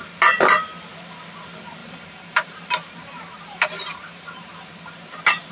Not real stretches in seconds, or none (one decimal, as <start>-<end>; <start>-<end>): 1.8-4.7